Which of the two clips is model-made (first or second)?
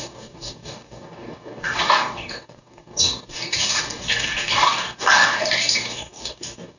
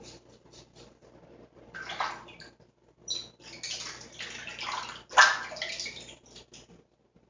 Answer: first